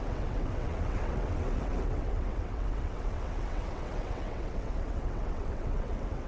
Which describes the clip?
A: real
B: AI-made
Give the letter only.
B